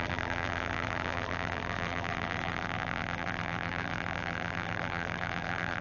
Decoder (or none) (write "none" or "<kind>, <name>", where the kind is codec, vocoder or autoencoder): vocoder, BigVGAN v2